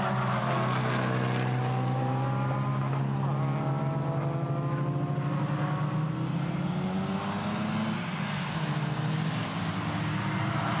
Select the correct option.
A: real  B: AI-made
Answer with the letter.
A